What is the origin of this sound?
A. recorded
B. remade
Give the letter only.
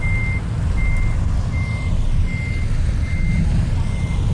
A